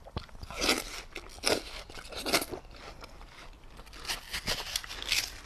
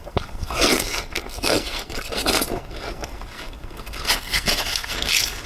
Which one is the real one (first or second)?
first